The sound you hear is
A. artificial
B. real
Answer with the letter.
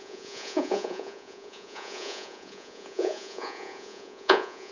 A